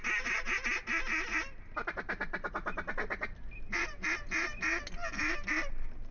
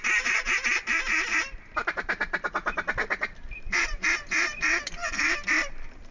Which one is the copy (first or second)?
second